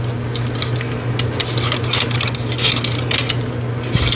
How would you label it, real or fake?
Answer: real